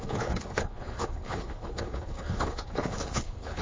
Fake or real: fake